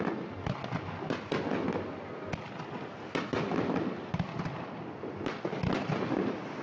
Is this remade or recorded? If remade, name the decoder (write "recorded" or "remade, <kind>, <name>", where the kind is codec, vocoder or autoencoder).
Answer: recorded